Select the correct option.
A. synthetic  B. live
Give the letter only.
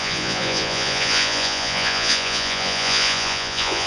A